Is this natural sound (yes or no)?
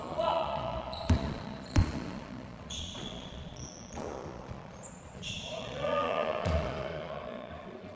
no